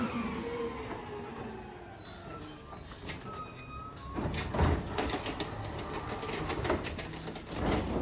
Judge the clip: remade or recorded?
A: recorded